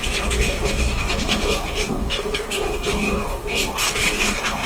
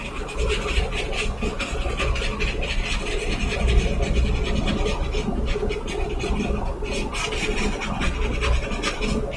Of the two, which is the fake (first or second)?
first